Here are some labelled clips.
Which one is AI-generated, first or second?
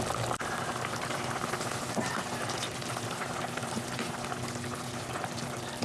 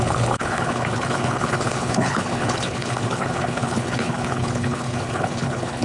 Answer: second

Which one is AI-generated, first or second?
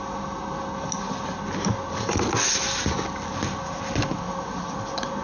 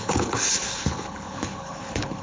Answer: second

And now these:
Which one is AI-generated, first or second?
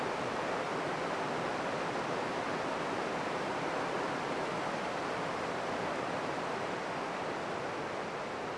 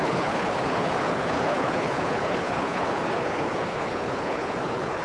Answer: second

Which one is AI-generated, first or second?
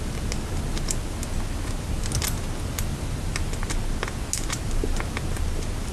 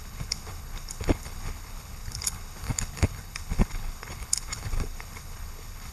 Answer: second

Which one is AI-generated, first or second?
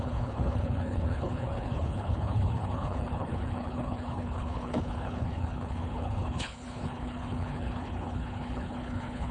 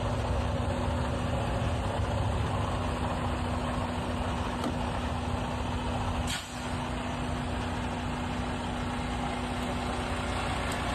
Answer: first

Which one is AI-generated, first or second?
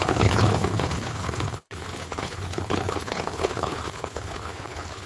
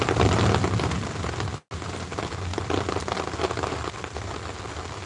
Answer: first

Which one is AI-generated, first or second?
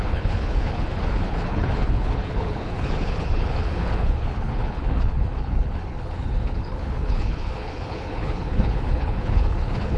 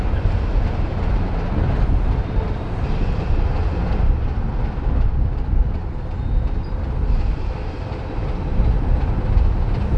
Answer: first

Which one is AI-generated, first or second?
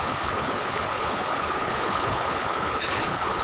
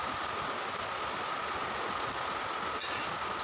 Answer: first